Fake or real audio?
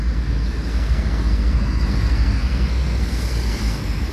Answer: fake